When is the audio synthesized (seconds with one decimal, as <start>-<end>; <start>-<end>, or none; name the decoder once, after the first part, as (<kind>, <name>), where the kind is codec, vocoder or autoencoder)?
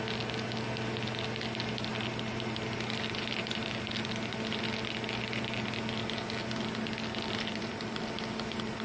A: 1.9-3.6 (vocoder, BigVGAN v2)